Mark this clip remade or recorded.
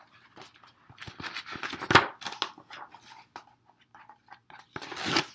recorded